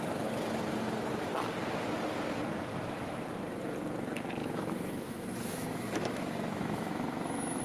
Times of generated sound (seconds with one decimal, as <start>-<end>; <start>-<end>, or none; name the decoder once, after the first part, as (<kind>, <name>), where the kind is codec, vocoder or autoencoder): 2.7-3.2 (autoencoder, DAC-VAE); 4.4-7.6